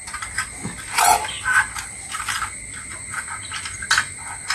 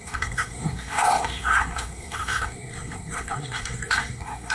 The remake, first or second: second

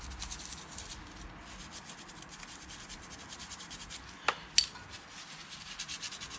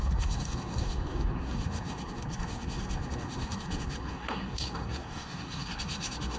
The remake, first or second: second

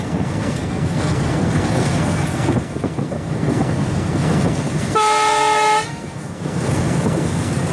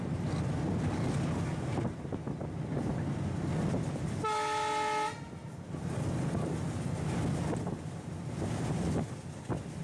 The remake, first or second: first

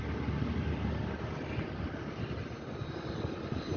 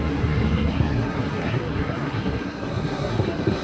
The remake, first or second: second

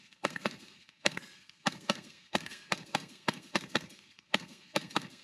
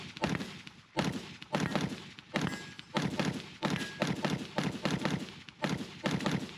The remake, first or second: first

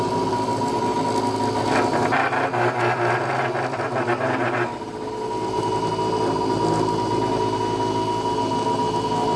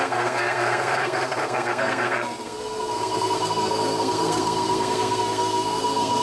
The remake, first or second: second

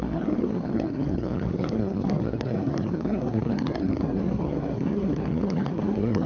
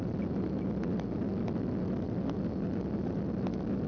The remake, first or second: first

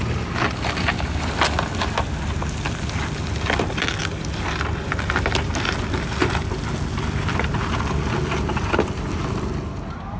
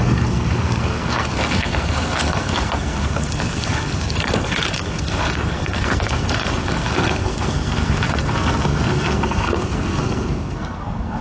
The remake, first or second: second